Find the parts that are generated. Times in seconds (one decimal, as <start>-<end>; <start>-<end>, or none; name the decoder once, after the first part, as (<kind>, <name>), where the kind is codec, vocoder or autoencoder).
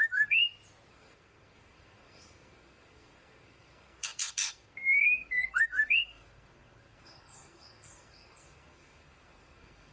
0.0-0.4 (codec, SNAC); 0.9-9.9